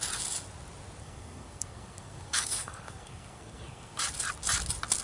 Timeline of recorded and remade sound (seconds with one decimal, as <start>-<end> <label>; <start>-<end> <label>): 0.0-1.0 recorded; 1.0-4.0 remade; 4.0-5.0 recorded